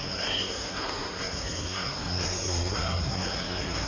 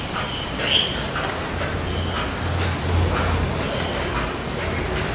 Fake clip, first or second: first